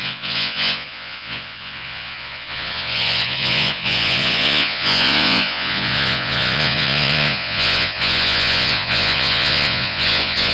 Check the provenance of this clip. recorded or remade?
remade